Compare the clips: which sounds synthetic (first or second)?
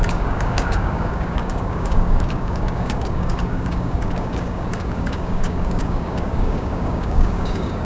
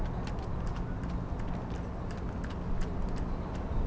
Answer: first